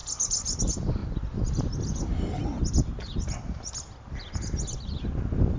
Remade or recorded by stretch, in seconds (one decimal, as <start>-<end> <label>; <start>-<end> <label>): 0.0-5.6 recorded